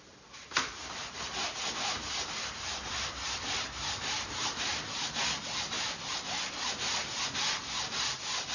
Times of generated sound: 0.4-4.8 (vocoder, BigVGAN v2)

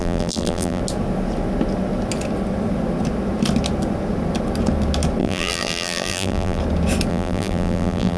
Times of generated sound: 0.0-0.8 (vocoder, BigVGAN v2); 5.2-6.6; 7.1-8.2

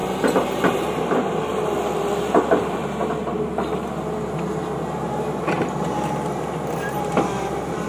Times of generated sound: 0.0-3.0 (vocoder, BigVGAN v2); 7.0-7.9

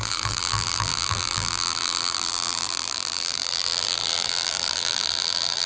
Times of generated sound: 0.0-5.7 (vocoder, BigVGAN v2)

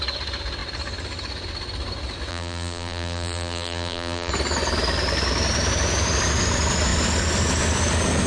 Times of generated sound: 2.3-4.3 (vocoder, BigVGAN v2)

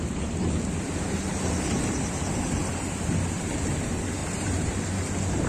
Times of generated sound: 4.2-4.7 (vocoder, BigVGAN v2)

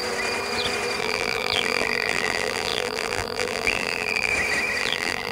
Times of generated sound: 1.0-4.3 (vocoder, BigVGAN v2); 4.8-5.3